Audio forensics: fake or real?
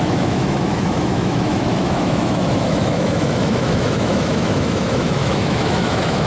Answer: fake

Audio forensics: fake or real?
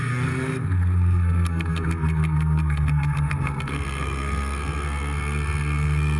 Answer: fake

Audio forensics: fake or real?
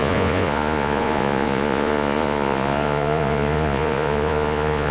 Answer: fake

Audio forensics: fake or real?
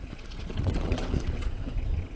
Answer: fake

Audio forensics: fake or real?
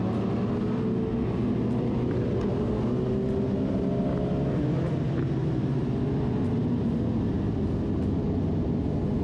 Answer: real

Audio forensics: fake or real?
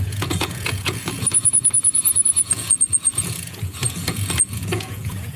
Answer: fake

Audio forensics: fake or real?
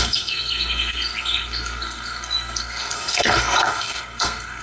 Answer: fake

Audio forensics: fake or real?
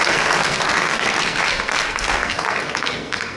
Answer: fake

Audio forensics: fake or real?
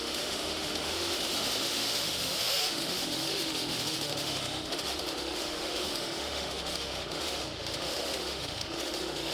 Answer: fake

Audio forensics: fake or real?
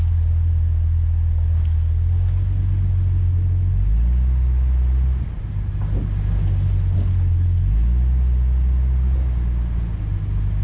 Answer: real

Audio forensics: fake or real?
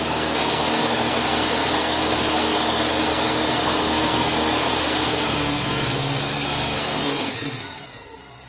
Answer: fake